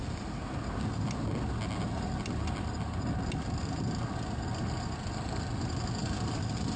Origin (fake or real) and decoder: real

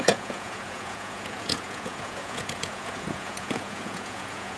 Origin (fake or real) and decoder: fake, vocoder, Vocos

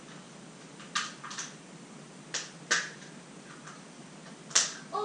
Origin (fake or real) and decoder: real